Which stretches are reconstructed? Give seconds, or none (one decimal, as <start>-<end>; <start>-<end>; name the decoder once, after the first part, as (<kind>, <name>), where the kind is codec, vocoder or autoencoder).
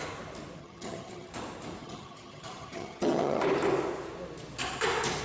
0.6-1.3 (vocoder, HiFi-GAN); 1.8-3.4